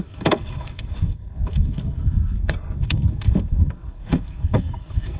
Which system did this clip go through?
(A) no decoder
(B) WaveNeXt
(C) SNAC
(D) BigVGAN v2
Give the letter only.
C